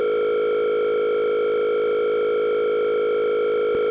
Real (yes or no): yes